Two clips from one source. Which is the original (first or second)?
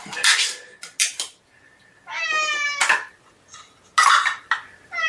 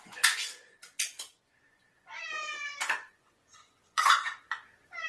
first